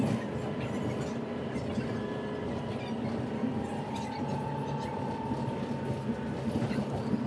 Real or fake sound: real